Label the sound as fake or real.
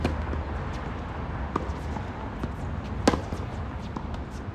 real